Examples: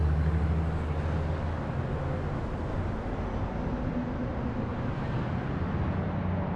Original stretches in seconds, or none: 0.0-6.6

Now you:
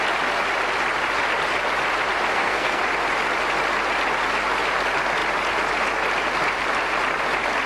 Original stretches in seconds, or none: 0.0-2.3; 2.8-7.7

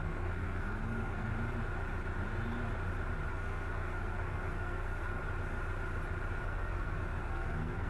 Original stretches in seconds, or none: 1.3-3.3; 5.2-6.4

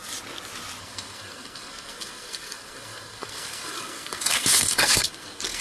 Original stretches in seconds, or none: 0.0-0.8

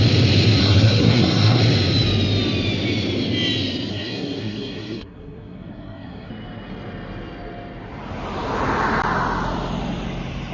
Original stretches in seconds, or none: 0.0-0.6; 1.6-3.9; 6.3-10.5

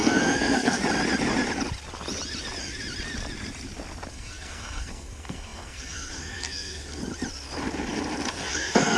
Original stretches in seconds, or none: 0.8-4.1; 7.0-8.3

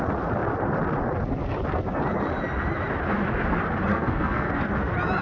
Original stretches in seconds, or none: 0.0-3.9; 4.5-5.2